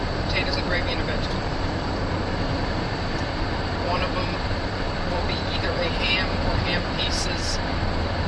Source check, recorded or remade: remade